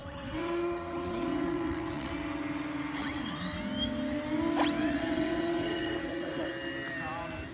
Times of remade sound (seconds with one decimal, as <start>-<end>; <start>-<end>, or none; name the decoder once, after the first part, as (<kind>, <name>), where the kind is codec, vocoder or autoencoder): 0.0-2.1 (vocoder, WaveNeXt); 3.0-3.6; 4.8-6.5